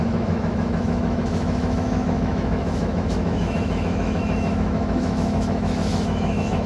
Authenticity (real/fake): fake